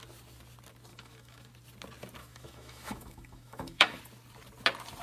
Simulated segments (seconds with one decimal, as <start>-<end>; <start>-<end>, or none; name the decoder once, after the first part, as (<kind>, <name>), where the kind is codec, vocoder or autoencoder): 0.9-1.5 (autoencoder, DAC-VAE); 2.2-4.0